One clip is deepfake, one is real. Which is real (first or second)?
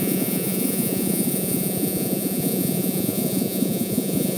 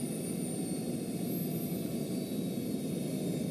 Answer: second